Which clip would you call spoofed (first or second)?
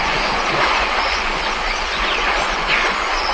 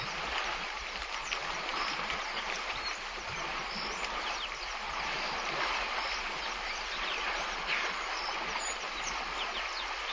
first